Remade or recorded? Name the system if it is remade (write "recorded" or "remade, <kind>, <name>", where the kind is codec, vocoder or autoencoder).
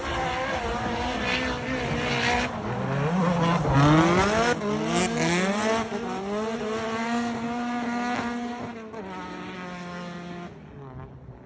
recorded